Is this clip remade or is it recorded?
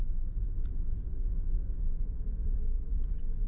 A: recorded